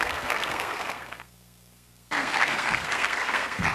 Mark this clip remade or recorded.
remade